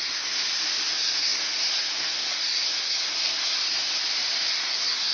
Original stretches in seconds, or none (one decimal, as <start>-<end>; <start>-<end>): 0.4-0.9; 4.0-4.5